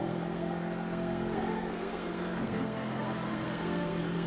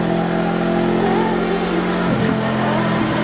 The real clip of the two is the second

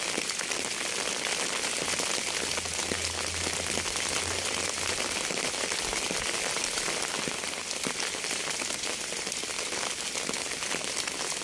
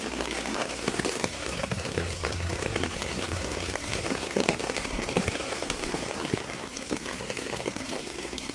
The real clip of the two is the first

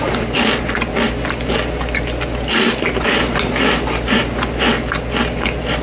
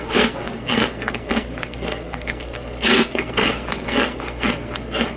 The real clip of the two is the first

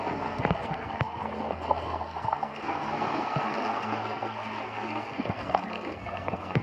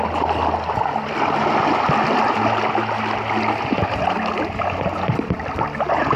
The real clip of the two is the second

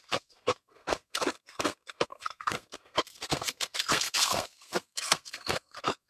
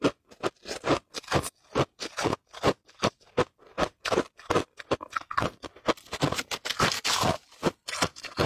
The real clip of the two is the second